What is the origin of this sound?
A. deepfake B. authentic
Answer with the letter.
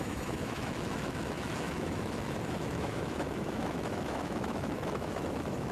A